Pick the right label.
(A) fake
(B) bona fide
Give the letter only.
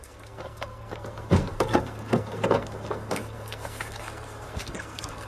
A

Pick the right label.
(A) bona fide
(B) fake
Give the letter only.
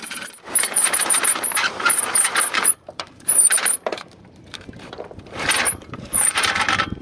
B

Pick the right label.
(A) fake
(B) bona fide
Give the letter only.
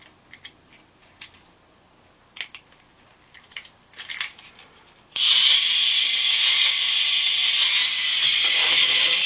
B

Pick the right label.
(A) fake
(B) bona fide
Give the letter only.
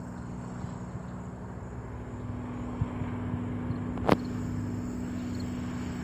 B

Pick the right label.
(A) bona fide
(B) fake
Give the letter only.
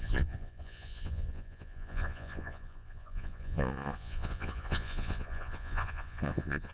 B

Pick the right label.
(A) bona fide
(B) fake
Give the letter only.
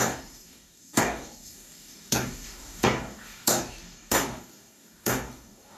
B